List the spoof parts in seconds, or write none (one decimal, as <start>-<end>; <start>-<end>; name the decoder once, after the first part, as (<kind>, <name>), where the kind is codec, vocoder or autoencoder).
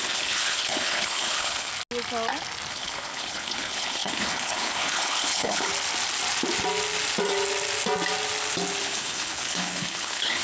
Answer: 0.0-1.7 (codec, HILCodec); 2.7-5.7; 8.8-10.4